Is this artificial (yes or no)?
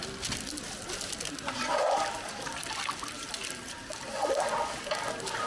no